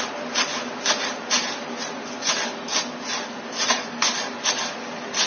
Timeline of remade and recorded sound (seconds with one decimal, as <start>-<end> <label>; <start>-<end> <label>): 0.0-5.3 recorded